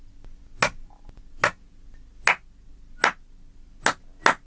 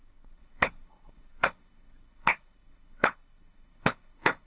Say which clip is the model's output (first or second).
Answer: second